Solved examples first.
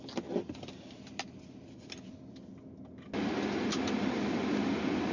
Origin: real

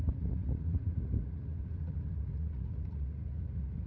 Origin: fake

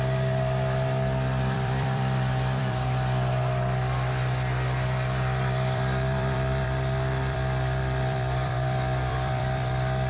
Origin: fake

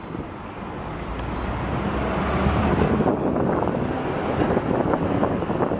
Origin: real